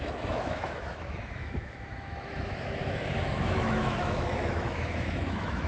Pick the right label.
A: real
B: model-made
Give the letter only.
B